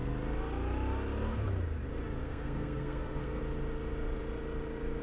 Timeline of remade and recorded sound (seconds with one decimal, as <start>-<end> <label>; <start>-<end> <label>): 0.0-2.2 recorded; 2.2-3.4 remade; 3.4-5.0 recorded